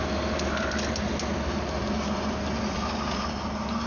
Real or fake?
real